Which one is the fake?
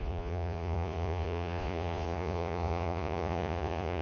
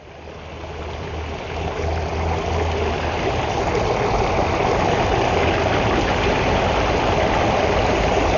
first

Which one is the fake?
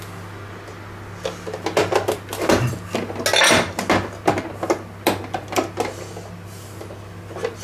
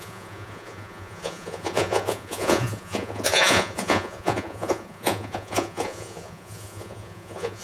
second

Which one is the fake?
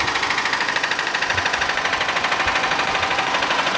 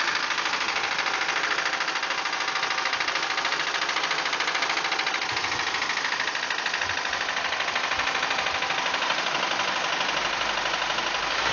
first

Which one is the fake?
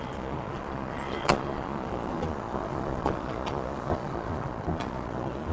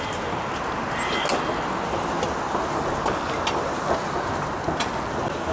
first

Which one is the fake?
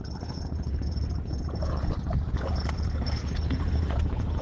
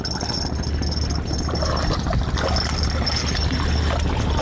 first